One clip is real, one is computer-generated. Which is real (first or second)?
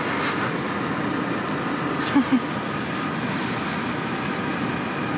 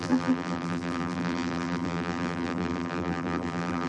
first